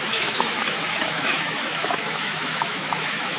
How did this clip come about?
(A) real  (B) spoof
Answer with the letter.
B